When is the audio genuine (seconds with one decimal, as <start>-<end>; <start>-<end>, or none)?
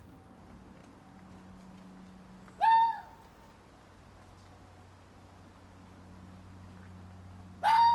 0.0-7.9